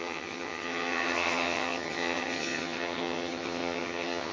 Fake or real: fake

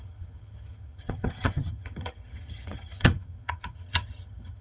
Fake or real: fake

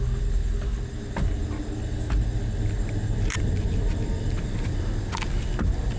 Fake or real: real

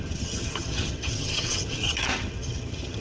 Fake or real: fake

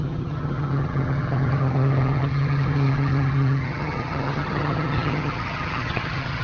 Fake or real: fake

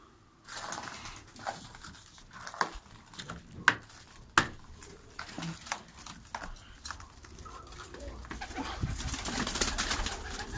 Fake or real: real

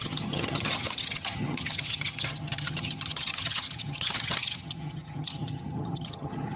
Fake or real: fake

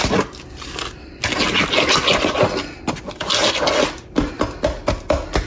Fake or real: real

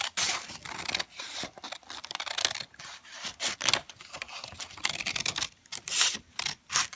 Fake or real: real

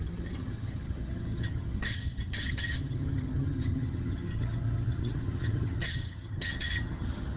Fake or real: fake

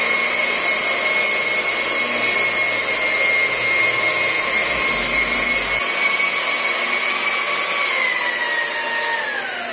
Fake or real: real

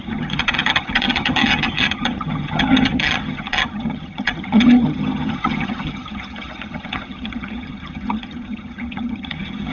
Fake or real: fake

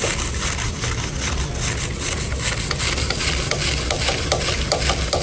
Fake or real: real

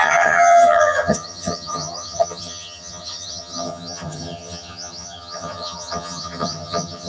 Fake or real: fake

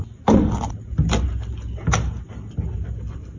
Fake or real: real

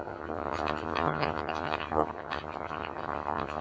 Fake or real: fake